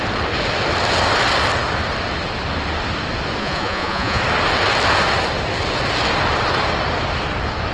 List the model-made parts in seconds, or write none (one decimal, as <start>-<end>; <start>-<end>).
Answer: 3.4-4.2